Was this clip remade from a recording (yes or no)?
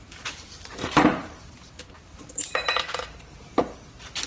no